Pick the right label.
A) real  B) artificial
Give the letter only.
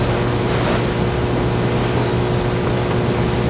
A